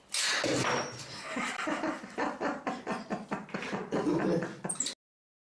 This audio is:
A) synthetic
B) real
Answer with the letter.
B